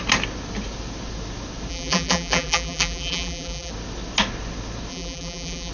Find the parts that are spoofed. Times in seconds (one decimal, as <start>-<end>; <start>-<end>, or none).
1.7-3.7; 4.9-5.7